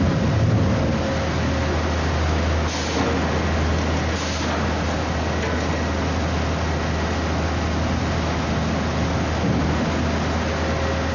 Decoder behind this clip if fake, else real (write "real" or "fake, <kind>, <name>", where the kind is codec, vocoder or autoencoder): real